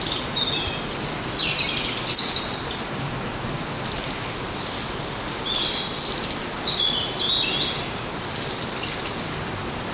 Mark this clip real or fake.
real